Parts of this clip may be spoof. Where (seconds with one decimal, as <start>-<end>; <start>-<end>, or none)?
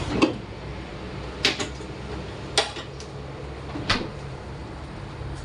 0.0-0.9; 4.1-5.4